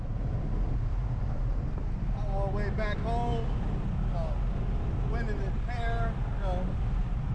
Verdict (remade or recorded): recorded